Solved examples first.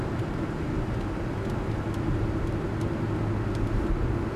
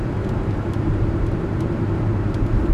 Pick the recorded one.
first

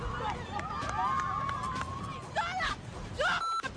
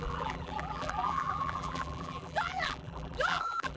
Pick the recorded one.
first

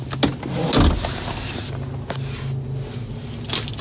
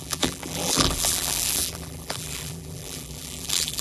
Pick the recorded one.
first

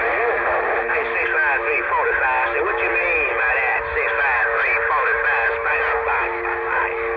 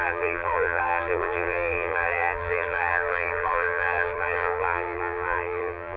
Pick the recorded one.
first